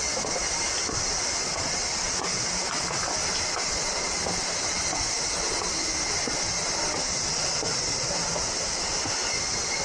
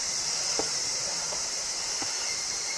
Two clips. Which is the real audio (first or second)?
first